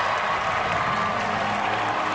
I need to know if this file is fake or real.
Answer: real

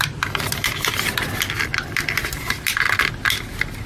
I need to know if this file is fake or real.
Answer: real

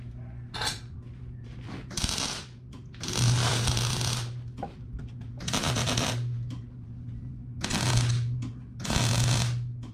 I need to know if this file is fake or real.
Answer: real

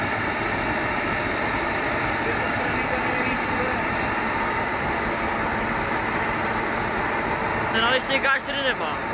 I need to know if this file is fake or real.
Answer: real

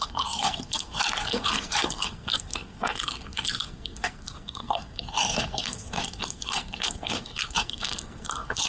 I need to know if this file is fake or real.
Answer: fake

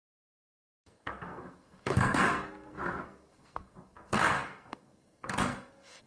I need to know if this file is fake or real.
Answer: fake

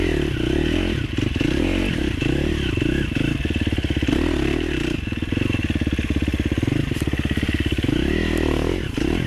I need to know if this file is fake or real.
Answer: real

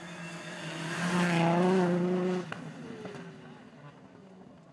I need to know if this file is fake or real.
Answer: real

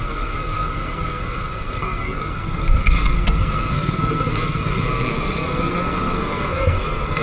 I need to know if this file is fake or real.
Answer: fake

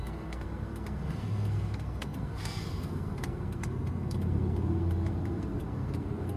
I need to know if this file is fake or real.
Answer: fake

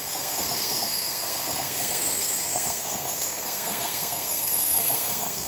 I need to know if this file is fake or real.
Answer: fake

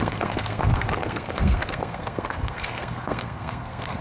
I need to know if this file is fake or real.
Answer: fake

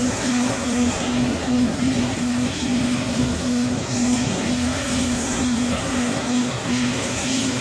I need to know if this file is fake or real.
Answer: fake